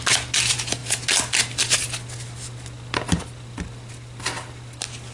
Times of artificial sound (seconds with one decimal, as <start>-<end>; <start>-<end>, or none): none